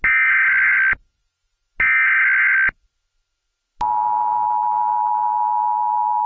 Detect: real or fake real